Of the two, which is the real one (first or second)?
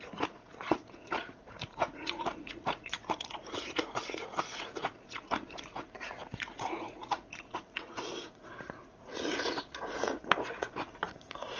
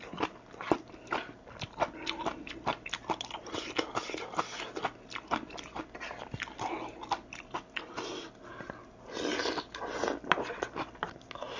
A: second